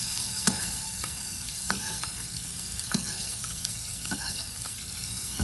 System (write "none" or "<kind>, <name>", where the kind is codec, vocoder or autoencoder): codec, SNAC